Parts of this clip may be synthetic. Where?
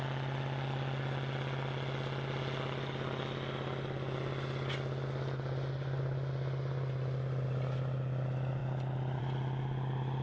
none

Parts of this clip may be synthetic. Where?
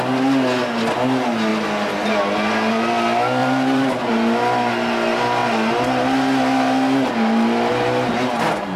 3.4-4.1 (vocoder, BigVGAN v2)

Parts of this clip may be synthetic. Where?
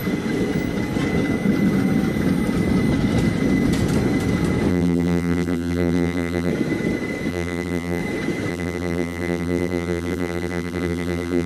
4.7-6.5 (vocoder, BigVGAN v2); 7.3-8.0; 8.5-11.5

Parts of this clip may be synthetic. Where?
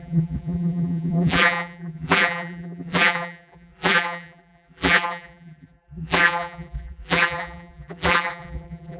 0.0-9.0 (vocoder, BigVGAN v2)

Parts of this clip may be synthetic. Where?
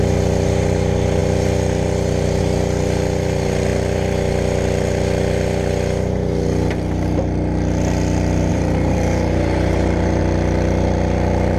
8.5-10.2 (vocoder, BigVGAN v2)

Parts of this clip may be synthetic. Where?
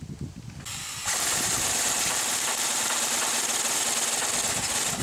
1.0-3.4 (vocoder, BigVGAN v2)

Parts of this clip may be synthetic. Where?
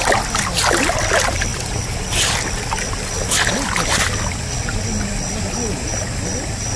5.9-6.8 (vocoder, BigVGAN v2)